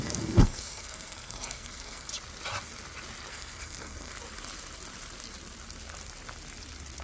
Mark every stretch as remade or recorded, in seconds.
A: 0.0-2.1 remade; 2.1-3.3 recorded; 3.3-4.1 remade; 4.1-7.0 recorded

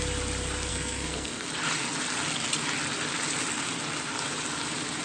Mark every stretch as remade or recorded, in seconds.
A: 0.0-0.7 recorded; 0.7-1.5 remade; 1.5-5.0 recorded

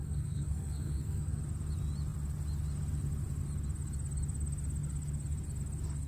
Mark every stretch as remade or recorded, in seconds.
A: 0.0-1.4 remade; 1.4-6.1 recorded

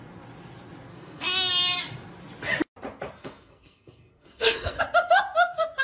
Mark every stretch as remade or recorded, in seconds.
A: 0.0-0.9 recorded; 0.9-1.5 remade; 1.5-3.2 recorded; 3.2-4.8 remade; 4.8-5.8 recorded